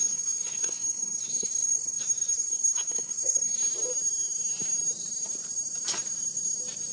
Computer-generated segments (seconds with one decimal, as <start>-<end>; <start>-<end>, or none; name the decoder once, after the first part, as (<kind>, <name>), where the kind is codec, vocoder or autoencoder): 0.0-3.6 (codec, SNAC)